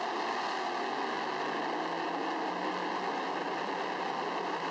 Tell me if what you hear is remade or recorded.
recorded